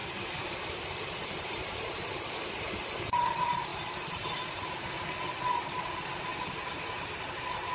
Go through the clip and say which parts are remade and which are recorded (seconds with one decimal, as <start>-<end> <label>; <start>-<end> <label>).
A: 0.0-2.7 remade; 2.7-3.7 recorded; 3.7-4.7 remade; 4.7-7.7 recorded